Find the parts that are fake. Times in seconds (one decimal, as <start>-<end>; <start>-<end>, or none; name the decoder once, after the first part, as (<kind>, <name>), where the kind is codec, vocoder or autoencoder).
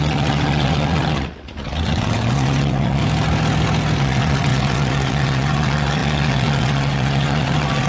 0.0-3.0 (vocoder, WaveNeXt); 4.0-7.9